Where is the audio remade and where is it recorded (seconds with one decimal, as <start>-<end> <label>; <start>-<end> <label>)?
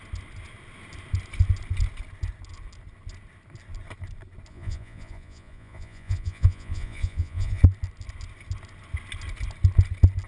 0.0-4.5 recorded; 4.5-7.6 remade; 7.6-10.3 recorded